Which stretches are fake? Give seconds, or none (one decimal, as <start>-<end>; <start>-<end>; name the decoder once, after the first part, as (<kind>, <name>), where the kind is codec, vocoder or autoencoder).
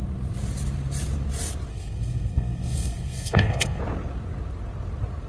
1.7-3.8 (codec, SNAC)